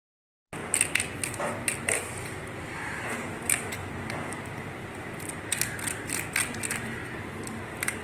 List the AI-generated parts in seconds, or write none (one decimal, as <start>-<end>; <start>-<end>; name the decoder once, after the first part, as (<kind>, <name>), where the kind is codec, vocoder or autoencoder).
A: 3.8-6.2 (vocoder, BigVGAN v2); 7.0-8.0